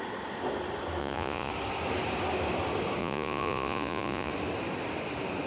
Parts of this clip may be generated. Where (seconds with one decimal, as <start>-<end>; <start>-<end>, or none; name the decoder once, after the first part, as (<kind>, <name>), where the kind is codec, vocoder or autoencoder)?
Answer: 1.0-1.5 (vocoder, Vocos); 3.0-4.3